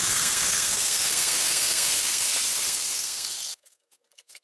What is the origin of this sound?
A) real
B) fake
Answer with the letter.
B